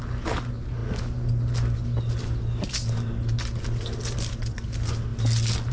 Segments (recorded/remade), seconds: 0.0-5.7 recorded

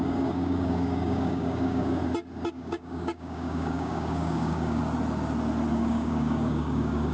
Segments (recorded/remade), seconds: 0.0-2.0 remade; 2.0-2.5 recorded; 2.5-4.8 remade; 4.8-5.7 recorded; 5.7-7.1 remade